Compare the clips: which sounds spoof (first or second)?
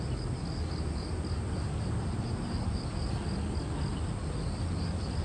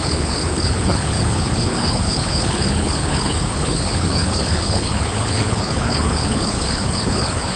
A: second